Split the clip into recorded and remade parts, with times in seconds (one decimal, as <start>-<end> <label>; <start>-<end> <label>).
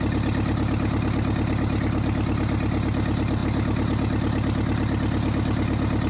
0.0-6.1 recorded